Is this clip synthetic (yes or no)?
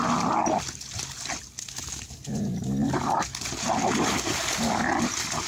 no